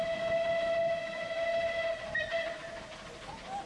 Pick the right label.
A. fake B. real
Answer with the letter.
B